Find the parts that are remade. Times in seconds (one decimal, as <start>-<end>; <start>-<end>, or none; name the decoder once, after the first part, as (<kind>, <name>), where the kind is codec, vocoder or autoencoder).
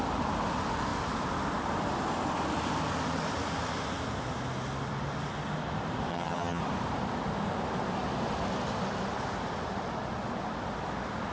6.1-6.6 (vocoder, HiFi-GAN)